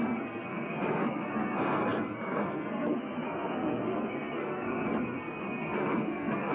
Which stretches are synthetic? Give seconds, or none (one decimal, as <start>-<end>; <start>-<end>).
0.0-6.5